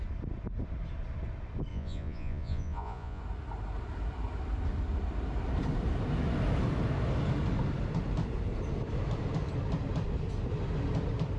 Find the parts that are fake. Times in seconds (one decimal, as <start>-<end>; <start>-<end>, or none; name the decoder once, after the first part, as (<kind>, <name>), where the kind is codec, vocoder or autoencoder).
1.7-3.2 (vocoder, Vocos)

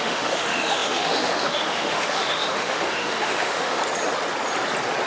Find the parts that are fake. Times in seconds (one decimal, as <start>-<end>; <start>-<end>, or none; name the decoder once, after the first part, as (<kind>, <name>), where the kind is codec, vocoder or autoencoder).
0.0-3.8 (autoencoder, DAC-VAE)

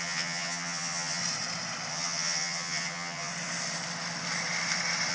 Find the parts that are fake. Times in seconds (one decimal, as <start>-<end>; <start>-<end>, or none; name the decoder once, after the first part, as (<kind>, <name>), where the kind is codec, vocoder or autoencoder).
0.0-1.2 (vocoder, HiFi-GAN); 1.9-3.3